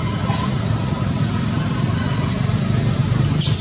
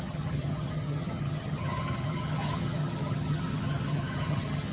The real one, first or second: first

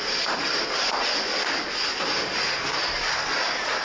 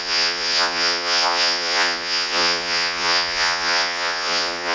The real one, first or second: first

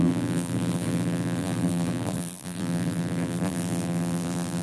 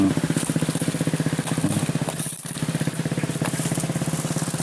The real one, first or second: second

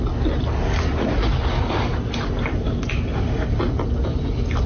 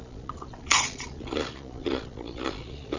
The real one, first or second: first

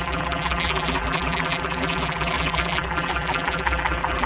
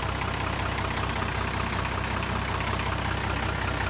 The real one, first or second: second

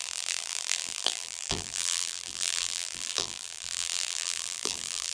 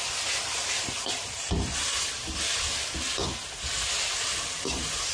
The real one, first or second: second